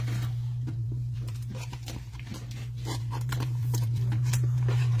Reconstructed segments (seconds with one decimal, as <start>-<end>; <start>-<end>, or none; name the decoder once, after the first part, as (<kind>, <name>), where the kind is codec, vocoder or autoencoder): 0.0-2.3 (vocoder, BigVGAN v2); 3.0-5.0